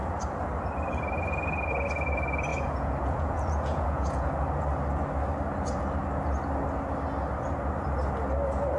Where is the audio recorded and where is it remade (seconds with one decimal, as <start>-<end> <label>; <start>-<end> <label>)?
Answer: 0.0-2.5 recorded; 2.5-4.3 remade; 4.3-8.8 recorded